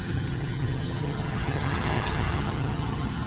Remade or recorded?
remade